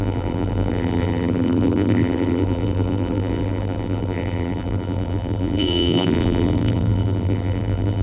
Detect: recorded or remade remade